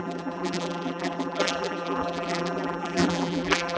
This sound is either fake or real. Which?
fake